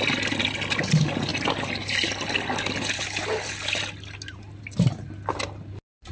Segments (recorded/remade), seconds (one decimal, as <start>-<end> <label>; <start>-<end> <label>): 0.0-6.1 recorded